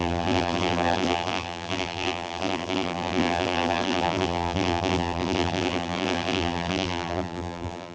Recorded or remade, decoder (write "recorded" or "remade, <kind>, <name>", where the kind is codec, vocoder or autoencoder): remade, vocoder, BigVGAN v2